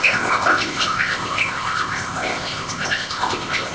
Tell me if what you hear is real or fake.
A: fake